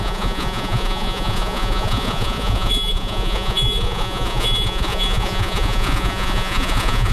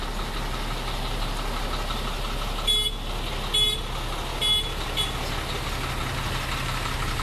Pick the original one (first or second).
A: second